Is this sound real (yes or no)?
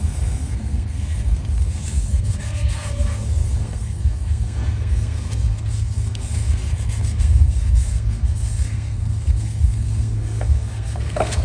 no